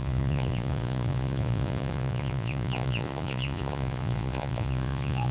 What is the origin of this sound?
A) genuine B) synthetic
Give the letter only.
B